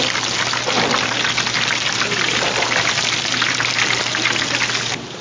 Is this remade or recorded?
recorded